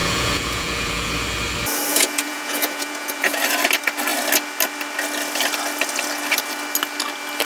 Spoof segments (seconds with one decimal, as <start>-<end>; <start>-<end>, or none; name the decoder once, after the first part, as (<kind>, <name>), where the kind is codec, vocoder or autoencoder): 0.0-1.1 (vocoder, Vocos); 1.9-3.4